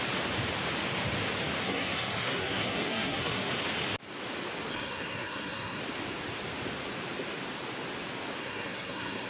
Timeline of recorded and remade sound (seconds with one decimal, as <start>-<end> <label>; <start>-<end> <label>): 0.0-1.6 recorded; 1.6-3.5 remade; 3.5-4.7 recorded; 4.7-5.8 remade; 5.8-8.4 recorded; 8.4-9.3 remade